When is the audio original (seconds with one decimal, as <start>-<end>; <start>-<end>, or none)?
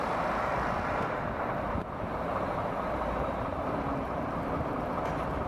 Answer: 0.5-1.6